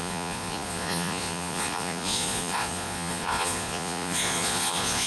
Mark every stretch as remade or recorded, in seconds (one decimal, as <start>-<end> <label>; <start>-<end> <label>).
0.0-5.1 remade